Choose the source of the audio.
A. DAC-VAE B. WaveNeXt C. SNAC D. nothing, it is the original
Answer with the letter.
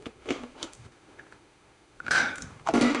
A